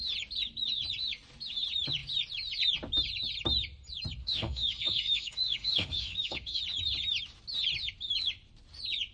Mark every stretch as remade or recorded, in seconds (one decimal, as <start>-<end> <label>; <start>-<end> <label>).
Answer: 0.0-4.2 recorded; 4.2-6.6 remade; 6.6-9.1 recorded